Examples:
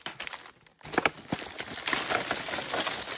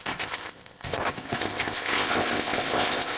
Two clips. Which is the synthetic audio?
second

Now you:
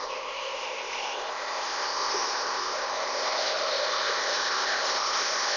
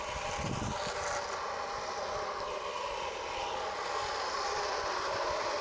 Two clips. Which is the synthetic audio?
first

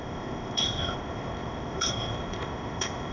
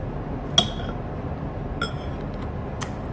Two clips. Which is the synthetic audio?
first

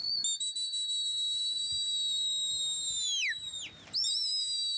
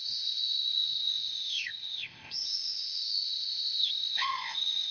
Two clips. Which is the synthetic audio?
second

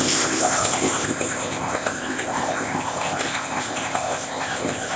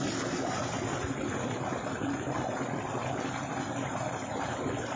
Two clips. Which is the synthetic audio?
first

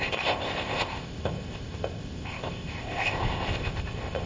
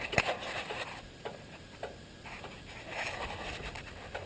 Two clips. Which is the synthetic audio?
first